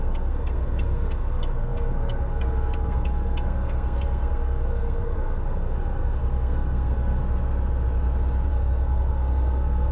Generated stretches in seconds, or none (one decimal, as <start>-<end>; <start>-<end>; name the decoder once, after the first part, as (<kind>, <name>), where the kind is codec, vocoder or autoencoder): 0.0-7.2 (codec, SNAC); 8.5-9.9